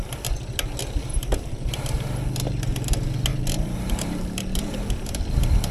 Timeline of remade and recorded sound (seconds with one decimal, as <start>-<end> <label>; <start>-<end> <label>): 0.0-1.1 recorded; 1.1-1.7 remade; 1.7-3.3 recorded; 3.3-5.2 remade; 5.2-5.7 recorded